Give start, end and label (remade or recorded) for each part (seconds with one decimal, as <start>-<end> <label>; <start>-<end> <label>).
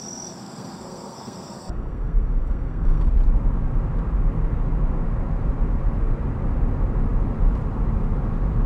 0.0-0.4 recorded; 0.4-3.1 remade; 3.1-8.7 recorded